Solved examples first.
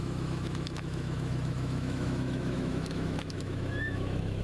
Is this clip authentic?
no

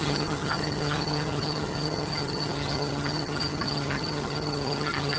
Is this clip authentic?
no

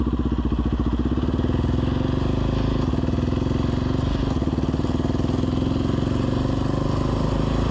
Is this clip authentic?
yes